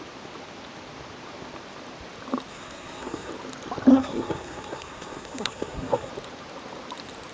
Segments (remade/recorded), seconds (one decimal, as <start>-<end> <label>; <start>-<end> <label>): 0.0-2.5 recorded; 2.5-3.3 remade; 3.3-3.9 recorded; 3.9-6.1 remade; 6.1-7.3 recorded